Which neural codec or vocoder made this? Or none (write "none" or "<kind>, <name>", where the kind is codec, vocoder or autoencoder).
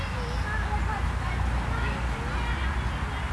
none